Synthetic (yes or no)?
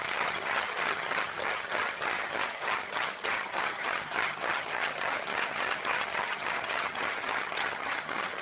yes